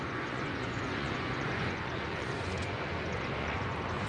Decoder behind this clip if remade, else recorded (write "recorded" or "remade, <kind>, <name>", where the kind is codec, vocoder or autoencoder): remade, vocoder, Vocos